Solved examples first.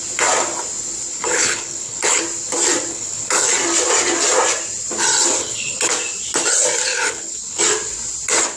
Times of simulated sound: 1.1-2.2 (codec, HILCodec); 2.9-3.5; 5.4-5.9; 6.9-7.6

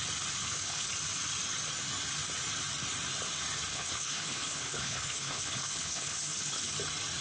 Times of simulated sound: 0.4-0.9 (codec, HILCodec); 3.7-6.7